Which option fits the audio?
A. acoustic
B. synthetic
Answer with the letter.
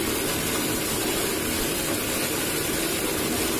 A